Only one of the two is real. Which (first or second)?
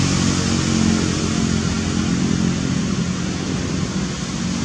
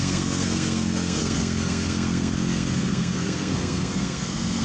first